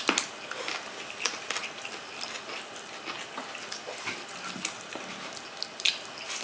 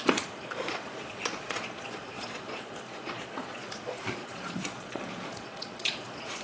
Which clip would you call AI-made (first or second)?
second